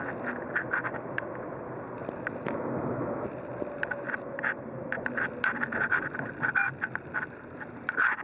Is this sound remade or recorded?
recorded